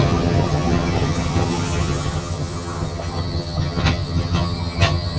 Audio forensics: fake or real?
fake